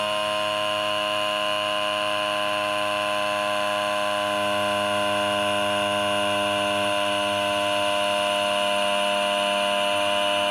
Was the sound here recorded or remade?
remade